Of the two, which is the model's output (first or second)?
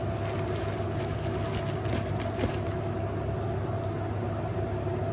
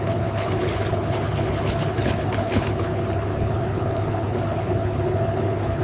second